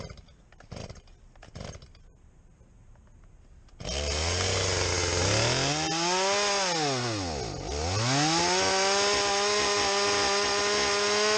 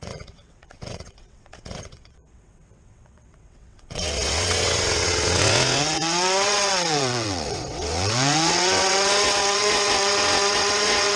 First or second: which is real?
first